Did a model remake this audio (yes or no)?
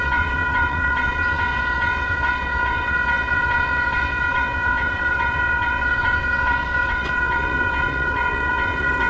yes